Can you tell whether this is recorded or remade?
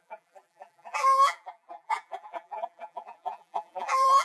remade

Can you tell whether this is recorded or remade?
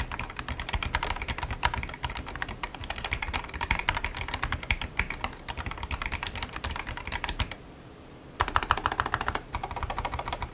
remade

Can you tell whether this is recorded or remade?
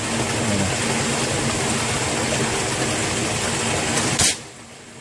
recorded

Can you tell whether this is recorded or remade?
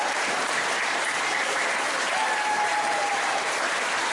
remade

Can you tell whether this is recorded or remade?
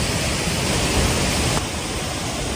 recorded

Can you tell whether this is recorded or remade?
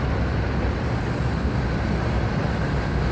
recorded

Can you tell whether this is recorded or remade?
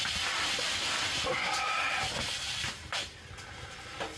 recorded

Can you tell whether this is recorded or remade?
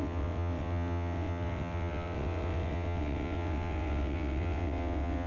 remade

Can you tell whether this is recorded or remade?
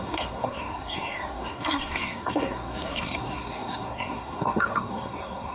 remade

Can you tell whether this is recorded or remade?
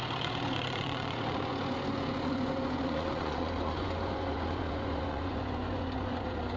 remade